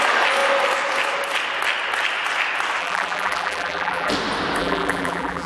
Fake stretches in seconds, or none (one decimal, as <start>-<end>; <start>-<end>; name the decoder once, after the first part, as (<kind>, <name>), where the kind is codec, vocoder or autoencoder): 2.8-4.1 (vocoder, BigVGAN v2); 4.6-5.5